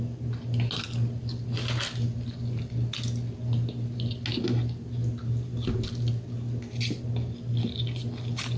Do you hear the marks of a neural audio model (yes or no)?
no